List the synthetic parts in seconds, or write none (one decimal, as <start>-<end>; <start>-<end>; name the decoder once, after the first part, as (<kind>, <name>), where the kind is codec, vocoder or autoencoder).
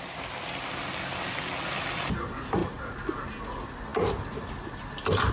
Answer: none